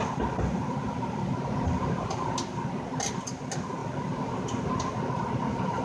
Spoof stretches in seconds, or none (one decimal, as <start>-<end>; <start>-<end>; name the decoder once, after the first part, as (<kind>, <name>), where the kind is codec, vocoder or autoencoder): 3.8-4.3 (vocoder, BigVGAN v2)